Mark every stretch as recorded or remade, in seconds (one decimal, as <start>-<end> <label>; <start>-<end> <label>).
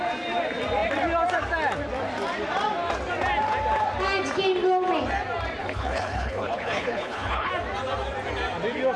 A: 0.0-5.6 recorded; 5.6-7.5 remade; 7.5-9.0 recorded